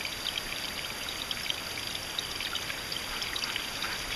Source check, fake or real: real